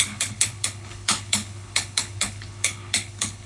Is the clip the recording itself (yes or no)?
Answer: no